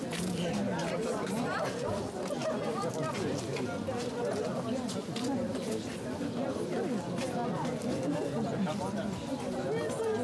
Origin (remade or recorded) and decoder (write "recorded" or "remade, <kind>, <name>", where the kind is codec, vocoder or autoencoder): recorded